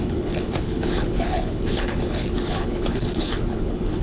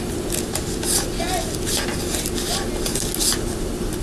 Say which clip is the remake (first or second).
first